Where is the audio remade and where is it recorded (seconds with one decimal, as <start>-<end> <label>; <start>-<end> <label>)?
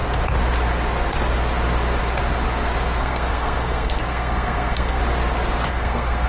0.0-3.0 recorded; 3.0-5.0 remade; 5.0-5.7 recorded; 5.7-6.3 remade